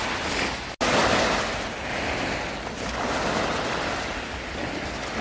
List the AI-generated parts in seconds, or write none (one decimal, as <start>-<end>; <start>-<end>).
none